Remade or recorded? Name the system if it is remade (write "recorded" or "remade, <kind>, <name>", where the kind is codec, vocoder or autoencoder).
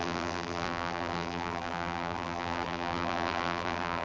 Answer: remade, vocoder, BigVGAN v2